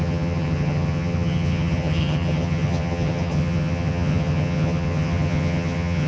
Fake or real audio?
fake